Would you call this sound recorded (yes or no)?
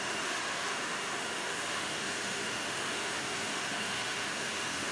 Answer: no